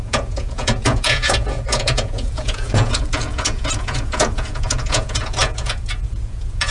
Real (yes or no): no